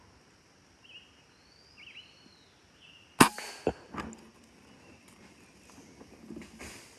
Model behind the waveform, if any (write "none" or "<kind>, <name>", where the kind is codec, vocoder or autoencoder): none